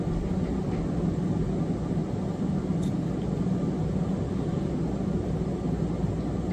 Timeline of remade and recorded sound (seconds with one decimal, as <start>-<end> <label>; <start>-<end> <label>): 0.0-6.5 recorded